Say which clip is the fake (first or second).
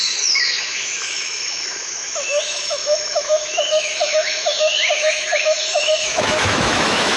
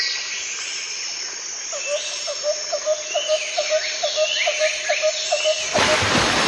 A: first